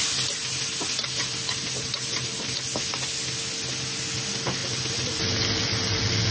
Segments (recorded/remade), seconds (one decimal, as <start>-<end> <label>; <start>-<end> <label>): 0.0-6.3 recorded